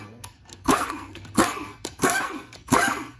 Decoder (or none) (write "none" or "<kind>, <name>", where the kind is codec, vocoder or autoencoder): codec, SNAC